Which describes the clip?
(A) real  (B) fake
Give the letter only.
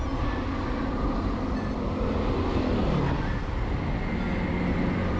A